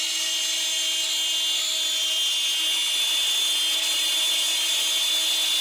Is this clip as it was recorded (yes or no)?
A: yes